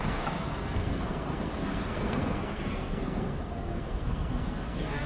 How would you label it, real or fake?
fake